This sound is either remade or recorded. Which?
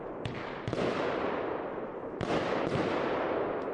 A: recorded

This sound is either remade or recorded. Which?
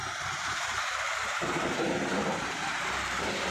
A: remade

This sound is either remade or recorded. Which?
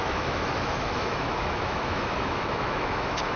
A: remade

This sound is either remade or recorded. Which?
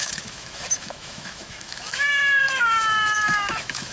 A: remade